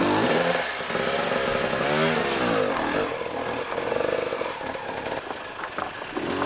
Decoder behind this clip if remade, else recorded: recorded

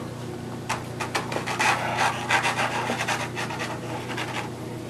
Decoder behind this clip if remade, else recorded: recorded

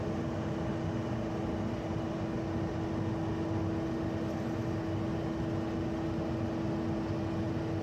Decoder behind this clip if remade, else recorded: recorded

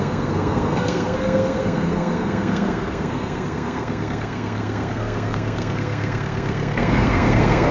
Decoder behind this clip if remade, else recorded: remade, codec, SNAC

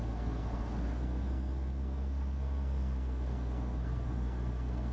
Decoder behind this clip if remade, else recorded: remade, codec, SNAC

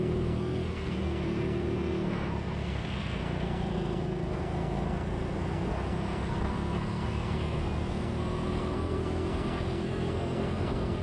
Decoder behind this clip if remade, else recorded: remade, codec, SNAC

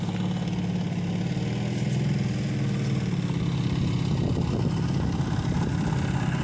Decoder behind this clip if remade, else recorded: recorded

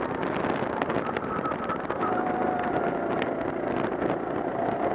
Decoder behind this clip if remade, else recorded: recorded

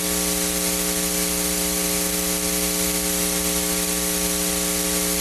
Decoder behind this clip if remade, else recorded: recorded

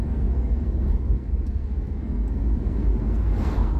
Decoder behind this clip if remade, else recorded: remade, codec, SNAC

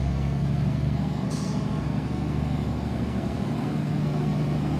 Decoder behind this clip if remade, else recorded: remade, codec, SNAC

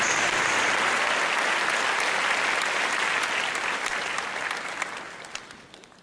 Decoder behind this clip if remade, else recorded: recorded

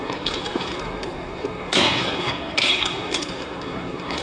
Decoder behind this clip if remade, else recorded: remade, codec, SNAC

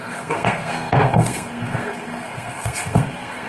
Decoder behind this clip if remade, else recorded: remade, codec, SNAC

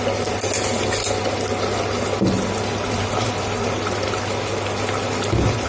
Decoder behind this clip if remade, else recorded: recorded